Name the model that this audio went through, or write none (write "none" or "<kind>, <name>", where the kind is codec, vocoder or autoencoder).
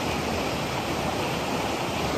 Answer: none